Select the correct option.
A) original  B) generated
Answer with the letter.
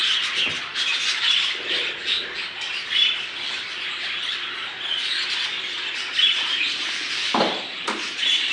A